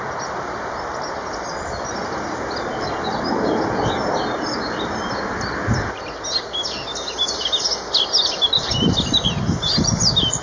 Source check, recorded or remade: recorded